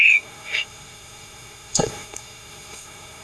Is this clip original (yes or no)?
no